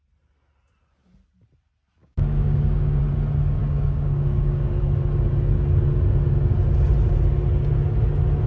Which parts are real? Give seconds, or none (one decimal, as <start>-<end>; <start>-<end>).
0.0-2.0; 3.0-3.6; 4.8-8.5